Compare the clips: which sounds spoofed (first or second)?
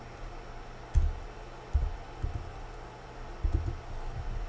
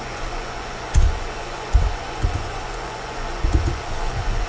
second